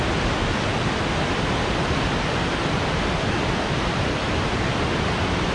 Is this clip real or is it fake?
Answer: real